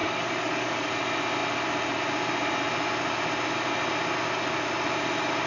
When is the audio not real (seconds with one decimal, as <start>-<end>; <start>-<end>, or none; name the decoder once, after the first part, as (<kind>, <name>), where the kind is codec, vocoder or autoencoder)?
0.0-0.9 (codec, DAC)